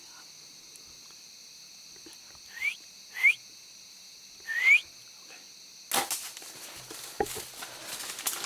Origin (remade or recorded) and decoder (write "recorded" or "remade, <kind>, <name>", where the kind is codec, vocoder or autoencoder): recorded